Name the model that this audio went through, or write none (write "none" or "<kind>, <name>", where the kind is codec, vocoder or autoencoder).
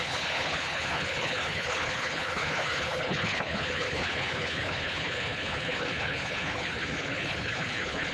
codec, HILCodec